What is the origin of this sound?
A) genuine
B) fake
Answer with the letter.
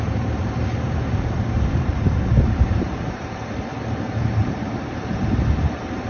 B